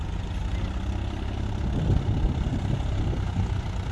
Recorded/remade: recorded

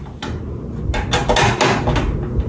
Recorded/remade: recorded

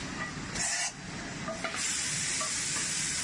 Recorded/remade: recorded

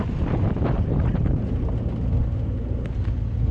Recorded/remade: recorded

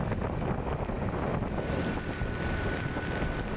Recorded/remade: recorded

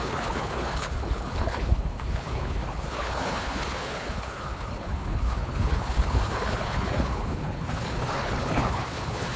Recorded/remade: remade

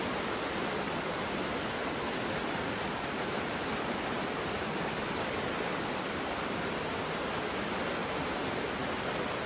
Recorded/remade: recorded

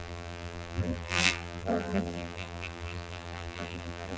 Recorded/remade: remade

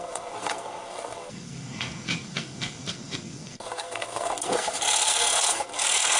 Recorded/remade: remade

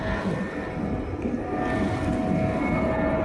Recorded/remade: recorded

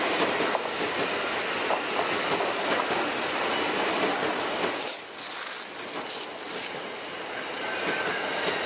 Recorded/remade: recorded